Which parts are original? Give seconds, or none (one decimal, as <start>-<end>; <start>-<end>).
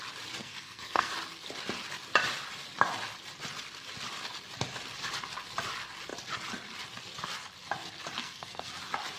0.0-0.4; 1.1-8.2; 8.7-9.2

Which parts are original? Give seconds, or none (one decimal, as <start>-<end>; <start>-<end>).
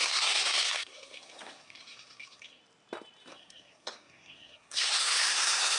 2.6-3.3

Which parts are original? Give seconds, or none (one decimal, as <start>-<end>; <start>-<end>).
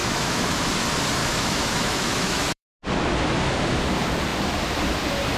0.6-1.2; 2.7-5.4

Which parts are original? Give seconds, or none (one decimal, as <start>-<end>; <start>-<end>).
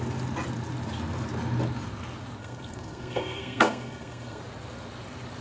0.0-2.4; 4.4-5.4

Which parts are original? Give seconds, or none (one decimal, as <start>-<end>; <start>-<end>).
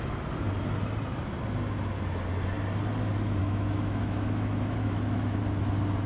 0.0-3.4; 5.4-6.1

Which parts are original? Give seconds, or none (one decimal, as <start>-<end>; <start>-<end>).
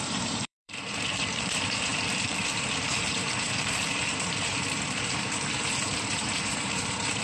none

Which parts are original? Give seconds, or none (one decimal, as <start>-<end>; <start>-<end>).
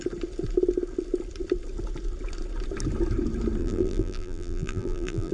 0.0-3.6